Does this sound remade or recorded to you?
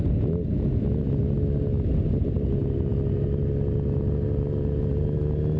recorded